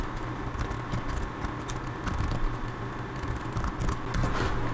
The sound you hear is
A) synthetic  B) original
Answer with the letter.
B